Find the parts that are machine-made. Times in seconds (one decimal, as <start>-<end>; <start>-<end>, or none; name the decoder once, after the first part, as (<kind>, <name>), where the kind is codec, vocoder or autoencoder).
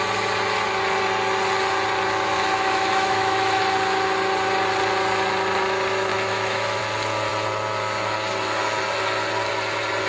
2.3-3.6 (autoencoder, DAC-VAE); 6.1-6.8